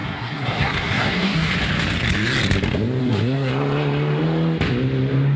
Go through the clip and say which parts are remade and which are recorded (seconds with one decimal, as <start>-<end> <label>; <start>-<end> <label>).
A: 0.0-1.5 remade; 1.5-3.0 recorded; 3.0-3.5 remade; 3.5-5.4 recorded